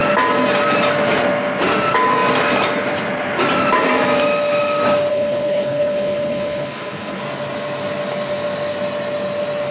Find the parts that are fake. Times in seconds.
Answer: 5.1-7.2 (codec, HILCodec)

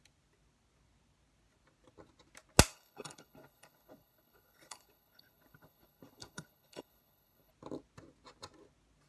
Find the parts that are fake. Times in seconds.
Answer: 2.7-7.5 (codec, HILCodec)

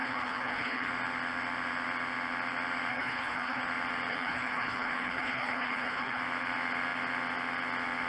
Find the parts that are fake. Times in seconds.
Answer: 0.0-0.9 (codec, HILCodec); 2.9-3.6; 4.1-6.2

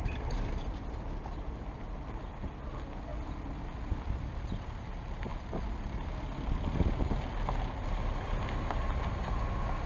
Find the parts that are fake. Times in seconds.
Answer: none